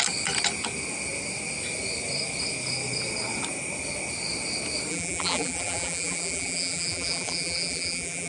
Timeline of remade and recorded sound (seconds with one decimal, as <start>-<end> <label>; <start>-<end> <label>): 0.0-4.9 recorded; 4.9-8.3 remade